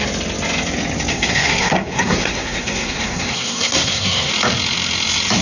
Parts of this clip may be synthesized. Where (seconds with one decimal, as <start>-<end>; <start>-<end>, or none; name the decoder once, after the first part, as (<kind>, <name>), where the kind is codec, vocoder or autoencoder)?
1.1-4.3 (codec, SNAC)